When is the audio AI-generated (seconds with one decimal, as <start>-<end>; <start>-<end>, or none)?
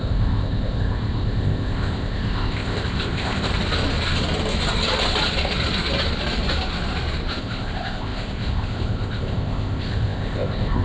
0.0-3.5; 7.4-10.8